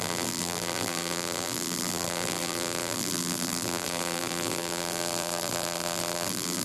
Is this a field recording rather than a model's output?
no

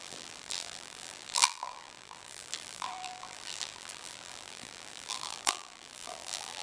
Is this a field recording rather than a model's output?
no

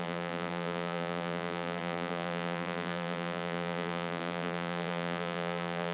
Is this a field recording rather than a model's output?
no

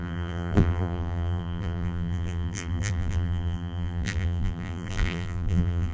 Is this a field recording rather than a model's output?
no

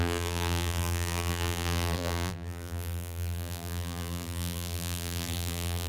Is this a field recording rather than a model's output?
no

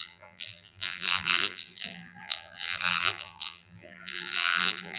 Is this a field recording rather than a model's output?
no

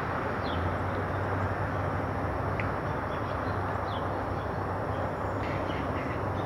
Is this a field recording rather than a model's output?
yes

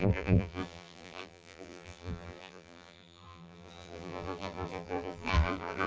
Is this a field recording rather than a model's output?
no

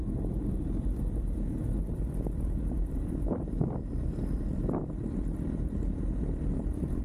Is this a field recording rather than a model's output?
no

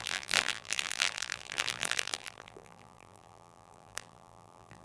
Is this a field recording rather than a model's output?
no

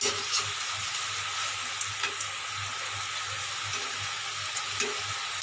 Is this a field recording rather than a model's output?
yes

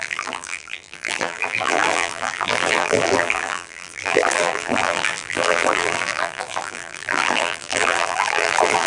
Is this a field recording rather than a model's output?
no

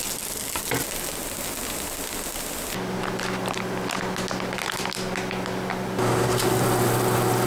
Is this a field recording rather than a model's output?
yes